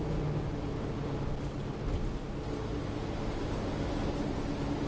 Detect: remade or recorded recorded